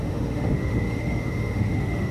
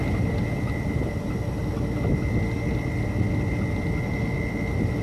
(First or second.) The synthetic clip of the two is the first